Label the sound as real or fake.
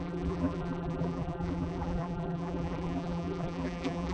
fake